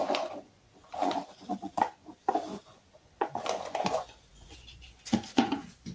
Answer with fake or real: fake